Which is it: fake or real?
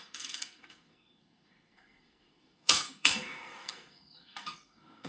fake